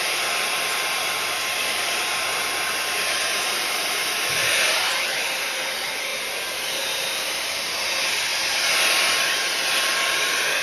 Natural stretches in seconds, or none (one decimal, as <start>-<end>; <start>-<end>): 6.1-6.8; 8.3-9.7